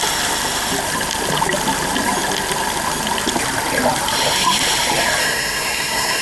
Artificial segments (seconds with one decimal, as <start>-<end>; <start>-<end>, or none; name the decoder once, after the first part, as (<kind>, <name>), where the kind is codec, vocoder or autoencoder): 5.2-6.2 (codec, SNAC)